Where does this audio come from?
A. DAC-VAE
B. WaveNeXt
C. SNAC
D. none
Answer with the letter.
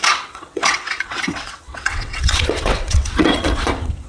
B